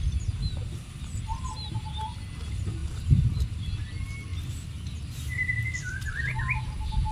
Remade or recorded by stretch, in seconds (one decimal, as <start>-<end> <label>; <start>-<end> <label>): 0.0-7.1 recorded